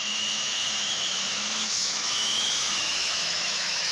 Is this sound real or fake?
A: fake